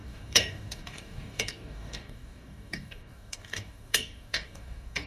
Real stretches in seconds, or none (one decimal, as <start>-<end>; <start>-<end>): none